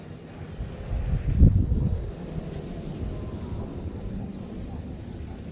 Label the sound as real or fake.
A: real